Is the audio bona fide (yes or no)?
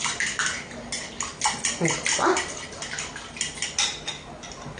yes